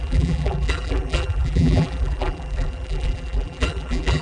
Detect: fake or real fake